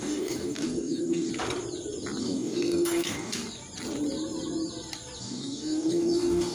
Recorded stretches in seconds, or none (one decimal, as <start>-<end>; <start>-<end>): 1.3-2.2; 3.4-5.2